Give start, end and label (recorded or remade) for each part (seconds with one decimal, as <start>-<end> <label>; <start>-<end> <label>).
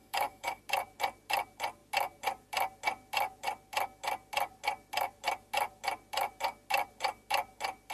0.0-0.6 remade; 0.6-7.9 recorded